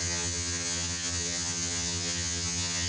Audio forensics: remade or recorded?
remade